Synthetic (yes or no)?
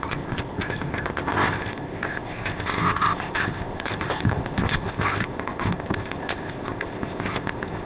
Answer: yes